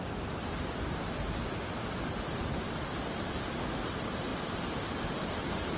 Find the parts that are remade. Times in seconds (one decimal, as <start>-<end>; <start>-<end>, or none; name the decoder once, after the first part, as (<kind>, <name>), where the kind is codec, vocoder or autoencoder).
none